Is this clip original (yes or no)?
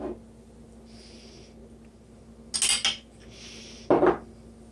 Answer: yes